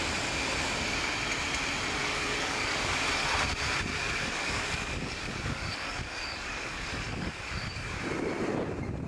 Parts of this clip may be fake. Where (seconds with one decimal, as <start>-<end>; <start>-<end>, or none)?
2.0-3.0; 3.9-8.0